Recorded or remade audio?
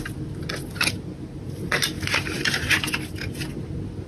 recorded